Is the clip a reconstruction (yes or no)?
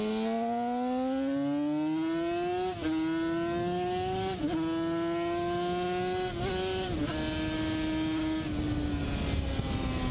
no